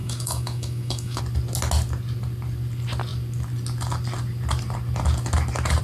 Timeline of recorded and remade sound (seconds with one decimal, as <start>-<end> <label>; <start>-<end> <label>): 0.0-1.2 remade; 1.2-5.8 recorded